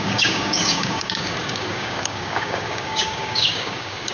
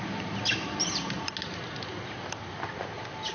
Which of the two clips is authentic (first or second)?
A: second